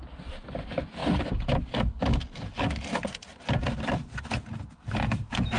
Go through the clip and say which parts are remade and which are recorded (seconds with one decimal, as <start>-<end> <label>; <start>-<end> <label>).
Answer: 0.0-5.6 recorded

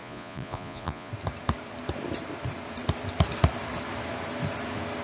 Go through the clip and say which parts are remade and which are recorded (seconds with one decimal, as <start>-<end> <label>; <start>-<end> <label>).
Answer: 0.0-1.1 remade; 1.1-5.0 recorded

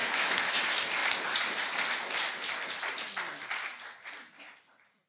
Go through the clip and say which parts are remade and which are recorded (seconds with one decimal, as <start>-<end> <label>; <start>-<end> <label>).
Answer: 0.0-0.6 remade; 0.6-5.1 recorded

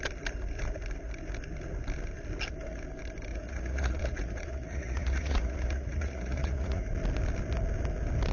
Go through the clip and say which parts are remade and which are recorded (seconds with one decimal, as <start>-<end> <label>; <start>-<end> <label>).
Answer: 0.0-3.3 recorded; 3.3-6.8 remade; 6.8-8.3 recorded